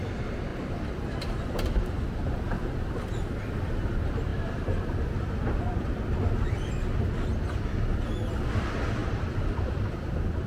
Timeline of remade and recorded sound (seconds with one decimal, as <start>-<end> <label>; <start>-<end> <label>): 0.0-4.3 recorded; 4.3-6.2 remade; 6.2-9.0 recorded; 9.0-10.5 remade